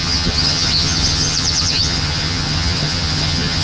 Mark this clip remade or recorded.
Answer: remade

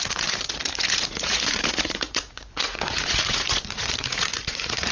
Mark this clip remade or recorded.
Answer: remade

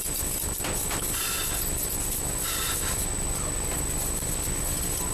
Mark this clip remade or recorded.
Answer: recorded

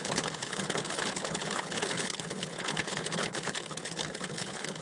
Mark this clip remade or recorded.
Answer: remade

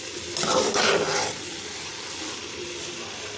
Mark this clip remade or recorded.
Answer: recorded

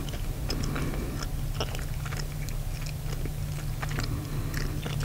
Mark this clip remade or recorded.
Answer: recorded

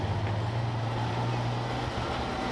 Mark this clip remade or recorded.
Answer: recorded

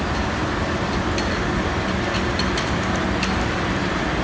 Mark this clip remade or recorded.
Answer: recorded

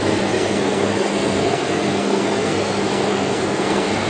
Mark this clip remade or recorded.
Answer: remade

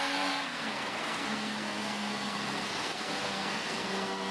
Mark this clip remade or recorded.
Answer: remade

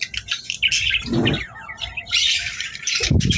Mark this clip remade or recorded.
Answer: recorded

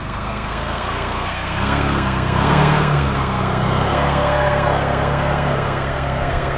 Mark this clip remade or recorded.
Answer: remade